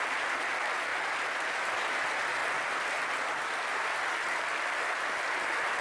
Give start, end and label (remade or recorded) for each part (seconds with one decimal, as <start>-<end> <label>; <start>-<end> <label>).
0.0-0.9 recorded; 0.9-2.0 remade; 2.0-2.4 recorded; 2.4-4.8 remade; 4.8-5.8 recorded